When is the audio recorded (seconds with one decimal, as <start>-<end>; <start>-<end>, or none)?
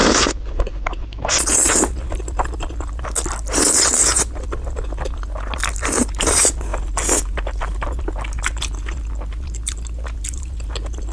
1.3-11.1